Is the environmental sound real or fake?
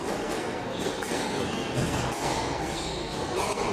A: fake